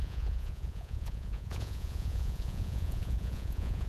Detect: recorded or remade remade